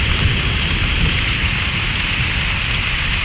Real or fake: fake